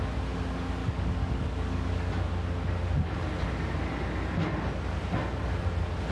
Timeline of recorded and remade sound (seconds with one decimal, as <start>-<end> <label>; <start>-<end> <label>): 0.0-0.8 recorded; 0.8-2.1 remade; 2.1-6.1 recorded